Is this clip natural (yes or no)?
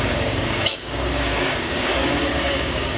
no